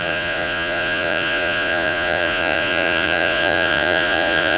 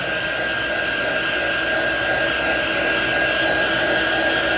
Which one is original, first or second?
second